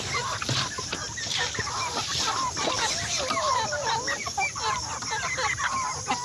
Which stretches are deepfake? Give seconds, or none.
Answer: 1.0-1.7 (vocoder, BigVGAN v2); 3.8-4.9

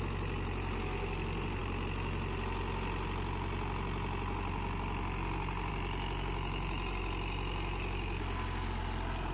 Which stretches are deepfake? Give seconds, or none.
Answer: none

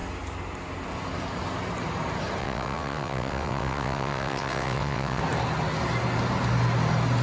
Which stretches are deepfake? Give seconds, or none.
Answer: 2.4-5.2 (vocoder, WaveNeXt)

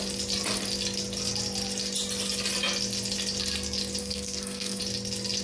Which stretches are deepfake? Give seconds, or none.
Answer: 4.0-4.8 (codec, SNAC)

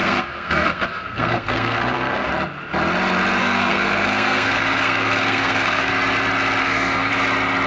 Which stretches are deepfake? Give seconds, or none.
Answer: 0.0-2.3 (codec, SNAC); 3.4-5.9; 6.6-7.1

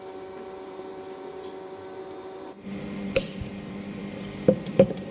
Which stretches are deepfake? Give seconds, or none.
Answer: 0.0-5.1 (vocoder, BigVGAN v2)

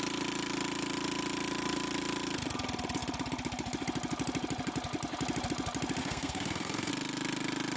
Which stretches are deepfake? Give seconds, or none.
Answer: 6.0-6.9 (codec, SNAC)